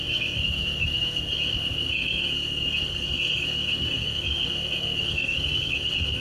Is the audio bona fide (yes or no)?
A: no